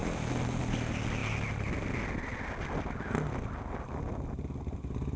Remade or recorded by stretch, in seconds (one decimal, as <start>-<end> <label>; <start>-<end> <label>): 0.0-5.2 recorded